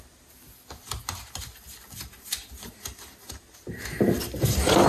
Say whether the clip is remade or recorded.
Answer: recorded